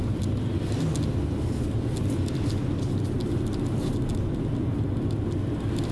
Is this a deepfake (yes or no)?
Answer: no